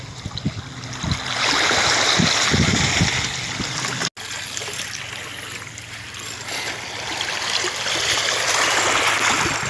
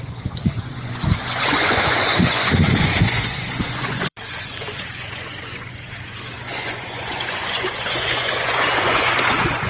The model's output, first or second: second